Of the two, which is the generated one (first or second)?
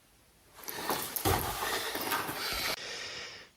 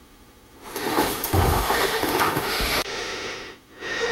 second